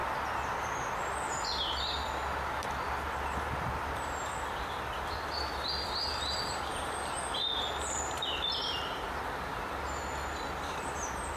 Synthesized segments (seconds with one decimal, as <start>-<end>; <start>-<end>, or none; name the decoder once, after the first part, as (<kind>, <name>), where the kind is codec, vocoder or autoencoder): none